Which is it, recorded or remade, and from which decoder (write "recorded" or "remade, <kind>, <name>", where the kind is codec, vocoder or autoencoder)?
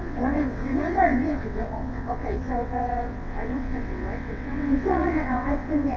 remade, vocoder, WaveNeXt